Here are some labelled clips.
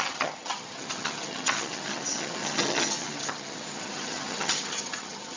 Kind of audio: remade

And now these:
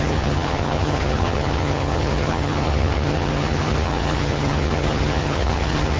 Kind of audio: remade